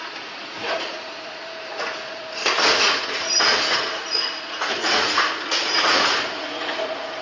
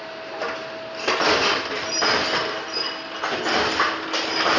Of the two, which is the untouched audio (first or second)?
second